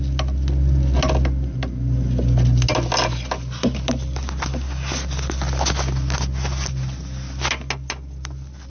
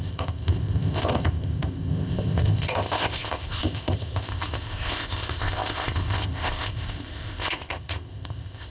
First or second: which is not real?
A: second